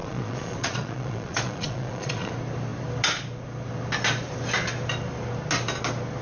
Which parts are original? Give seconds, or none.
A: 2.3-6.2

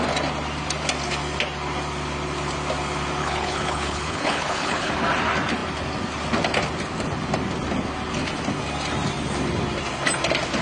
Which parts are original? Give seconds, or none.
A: 0.0-3.2; 4.9-10.6

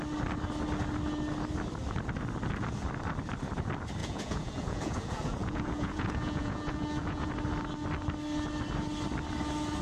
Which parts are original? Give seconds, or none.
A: 0.0-4.0; 7.3-9.8

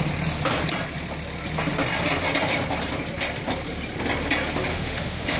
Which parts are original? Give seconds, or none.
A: 0.0-4.7